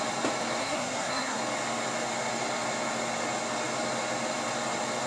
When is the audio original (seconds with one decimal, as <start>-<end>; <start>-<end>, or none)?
0.0-0.6; 1.4-5.1